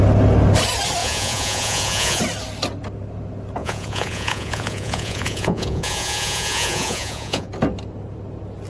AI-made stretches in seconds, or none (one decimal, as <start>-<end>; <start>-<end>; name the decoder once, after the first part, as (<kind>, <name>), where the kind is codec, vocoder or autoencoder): 1.0-2.2 (vocoder, Vocos); 3.6-7.5

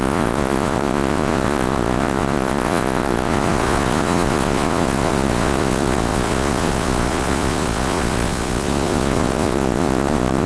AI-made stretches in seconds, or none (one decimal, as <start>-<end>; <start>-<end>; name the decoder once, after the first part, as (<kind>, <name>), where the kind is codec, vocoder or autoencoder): 0.0-10.5 (vocoder, Vocos)

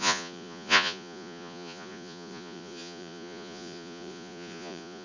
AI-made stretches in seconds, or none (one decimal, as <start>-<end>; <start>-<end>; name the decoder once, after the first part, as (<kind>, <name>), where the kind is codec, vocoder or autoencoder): 0.0-5.0 (vocoder, Vocos)

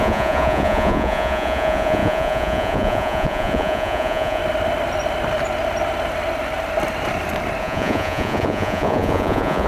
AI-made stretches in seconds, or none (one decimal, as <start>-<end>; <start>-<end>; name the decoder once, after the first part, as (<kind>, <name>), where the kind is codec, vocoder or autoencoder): 0.0-4.4 (vocoder, Vocos); 7.6-9.7

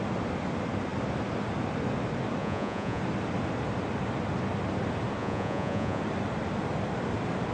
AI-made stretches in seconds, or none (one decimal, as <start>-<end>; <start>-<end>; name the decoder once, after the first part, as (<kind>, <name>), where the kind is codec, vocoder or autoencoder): 2.4-3.0 (vocoder, Vocos); 5.2-6.0

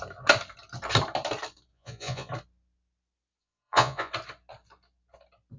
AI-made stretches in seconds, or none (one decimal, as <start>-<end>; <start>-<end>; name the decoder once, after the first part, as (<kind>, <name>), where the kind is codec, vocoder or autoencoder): 1.7-2.3 (vocoder, Vocos); 3.4-4.1

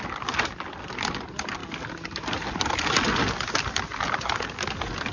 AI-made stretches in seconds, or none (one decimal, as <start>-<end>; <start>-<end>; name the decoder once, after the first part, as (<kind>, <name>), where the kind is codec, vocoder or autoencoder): none

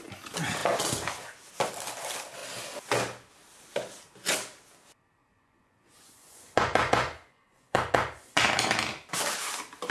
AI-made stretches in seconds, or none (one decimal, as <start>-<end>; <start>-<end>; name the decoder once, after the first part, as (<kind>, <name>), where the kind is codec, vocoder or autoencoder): 5.2-8.4 (vocoder, Vocos)